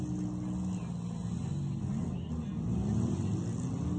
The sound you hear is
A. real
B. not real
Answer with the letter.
A